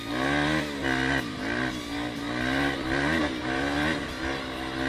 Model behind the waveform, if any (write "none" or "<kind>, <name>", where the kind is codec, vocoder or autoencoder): none